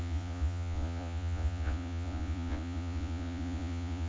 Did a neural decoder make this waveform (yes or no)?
yes